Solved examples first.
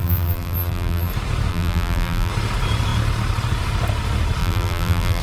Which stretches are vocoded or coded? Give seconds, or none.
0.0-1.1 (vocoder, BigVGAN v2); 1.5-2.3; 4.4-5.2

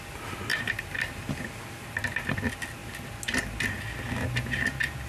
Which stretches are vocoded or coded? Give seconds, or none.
0.5-1.2 (vocoder, BigVGAN v2)

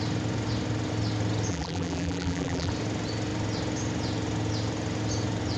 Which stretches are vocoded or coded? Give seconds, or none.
1.5-2.7 (vocoder, BigVGAN v2)

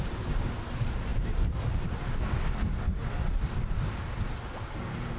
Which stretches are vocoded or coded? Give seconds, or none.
0.0-5.2 (vocoder, BigVGAN v2)

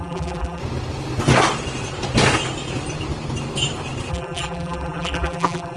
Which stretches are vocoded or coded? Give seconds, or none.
0.0-0.6 (vocoder, BigVGAN v2); 4.1-5.8

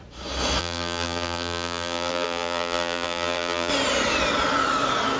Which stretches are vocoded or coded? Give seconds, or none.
0.6-3.7 (vocoder, BigVGAN v2)